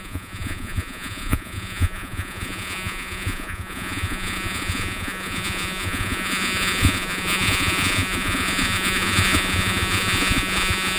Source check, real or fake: fake